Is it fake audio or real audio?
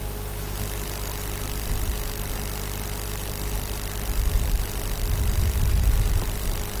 real